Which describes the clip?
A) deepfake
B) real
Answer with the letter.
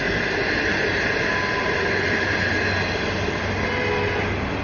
B